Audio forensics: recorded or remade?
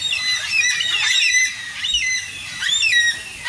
recorded